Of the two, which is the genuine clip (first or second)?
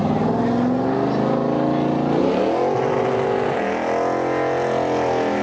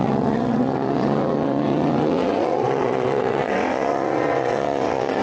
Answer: first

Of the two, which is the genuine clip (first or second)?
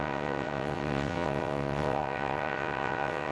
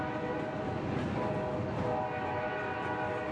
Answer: second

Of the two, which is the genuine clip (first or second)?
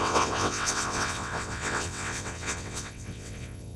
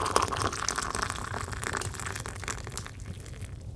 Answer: second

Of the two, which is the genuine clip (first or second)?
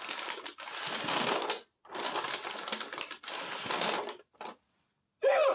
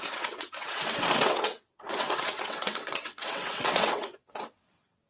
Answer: first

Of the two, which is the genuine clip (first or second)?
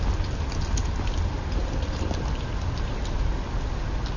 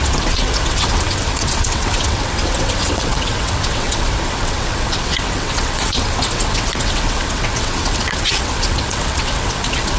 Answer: first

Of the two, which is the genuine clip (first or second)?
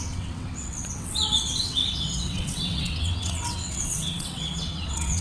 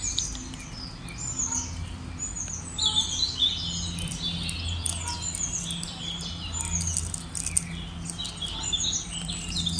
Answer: second